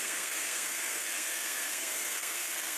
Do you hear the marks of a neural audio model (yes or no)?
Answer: yes